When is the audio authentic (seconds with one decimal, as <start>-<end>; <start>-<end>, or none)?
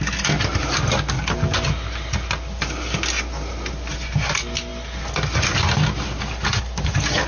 0.0-7.3